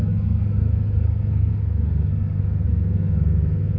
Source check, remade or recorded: remade